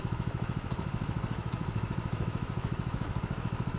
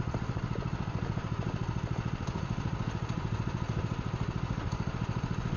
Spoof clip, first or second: first